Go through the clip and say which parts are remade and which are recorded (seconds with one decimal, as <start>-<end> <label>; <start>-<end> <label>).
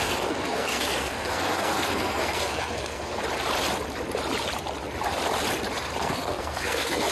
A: 0.0-3.2 remade; 3.2-6.0 recorded; 6.0-7.1 remade